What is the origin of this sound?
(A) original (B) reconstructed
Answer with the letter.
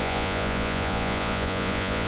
B